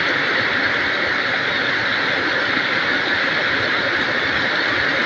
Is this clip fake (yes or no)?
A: yes